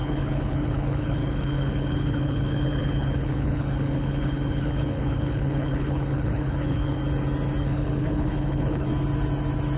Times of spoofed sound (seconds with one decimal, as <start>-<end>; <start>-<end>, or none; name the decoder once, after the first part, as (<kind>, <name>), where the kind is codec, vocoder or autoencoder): 0.0-7.0 (codec, HILCodec); 7.6-8.9